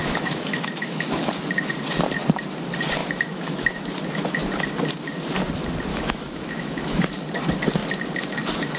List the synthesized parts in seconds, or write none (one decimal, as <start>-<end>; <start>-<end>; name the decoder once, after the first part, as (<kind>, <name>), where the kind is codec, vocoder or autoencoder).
0.0-1.3 (autoencoder, DAC-VAE); 3.0-3.8; 5.9-7.0